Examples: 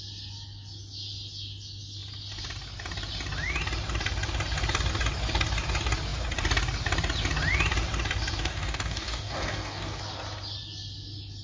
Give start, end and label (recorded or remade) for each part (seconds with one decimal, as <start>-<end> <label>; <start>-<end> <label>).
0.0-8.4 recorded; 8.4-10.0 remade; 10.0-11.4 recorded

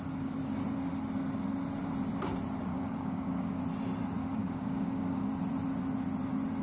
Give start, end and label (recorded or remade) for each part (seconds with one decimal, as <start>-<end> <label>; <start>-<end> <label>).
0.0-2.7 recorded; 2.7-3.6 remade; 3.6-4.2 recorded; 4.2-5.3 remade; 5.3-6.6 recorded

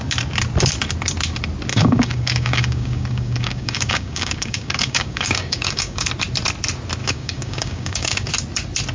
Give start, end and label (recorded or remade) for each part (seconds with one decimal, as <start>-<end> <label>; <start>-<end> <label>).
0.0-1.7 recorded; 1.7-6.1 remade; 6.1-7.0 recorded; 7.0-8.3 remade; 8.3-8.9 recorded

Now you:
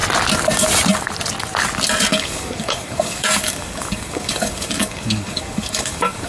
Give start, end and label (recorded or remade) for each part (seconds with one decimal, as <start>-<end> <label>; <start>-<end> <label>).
0.0-2.1 recorded; 2.1-6.3 remade

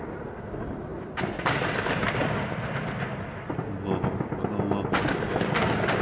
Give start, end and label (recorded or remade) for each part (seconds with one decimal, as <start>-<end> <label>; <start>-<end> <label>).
0.0-6.0 recorded

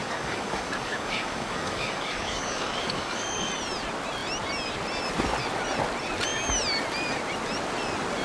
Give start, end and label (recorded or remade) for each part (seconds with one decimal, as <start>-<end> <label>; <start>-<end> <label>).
0.0-3.5 remade; 3.5-8.2 recorded